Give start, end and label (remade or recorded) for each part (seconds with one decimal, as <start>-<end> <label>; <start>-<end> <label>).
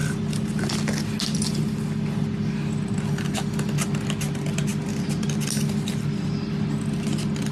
0.0-7.5 recorded